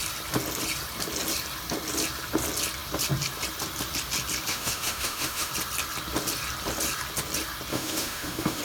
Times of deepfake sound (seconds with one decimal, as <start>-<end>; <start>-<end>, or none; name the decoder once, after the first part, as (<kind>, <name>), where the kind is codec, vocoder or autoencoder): 4.5-5.5 (autoencoder, DAC-VAE); 7.7-8.6